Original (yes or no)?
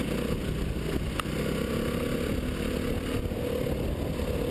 yes